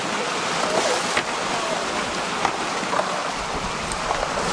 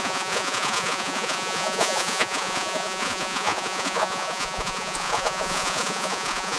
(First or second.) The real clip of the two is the first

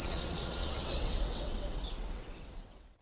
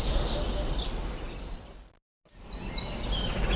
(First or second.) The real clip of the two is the second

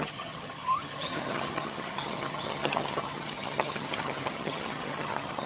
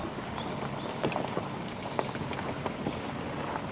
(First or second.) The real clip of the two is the second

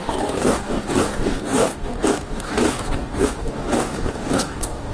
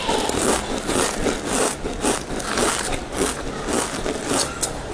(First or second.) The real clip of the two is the second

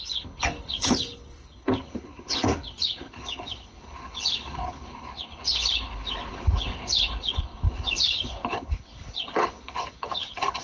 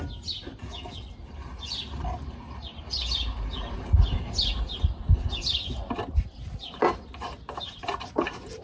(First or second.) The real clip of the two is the second